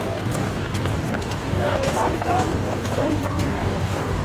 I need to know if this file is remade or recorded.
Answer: remade